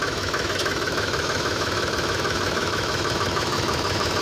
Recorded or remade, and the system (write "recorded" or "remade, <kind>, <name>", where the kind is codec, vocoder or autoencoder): remade, autoencoder, DAC-VAE